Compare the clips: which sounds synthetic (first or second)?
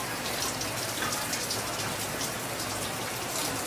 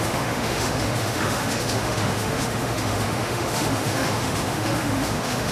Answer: second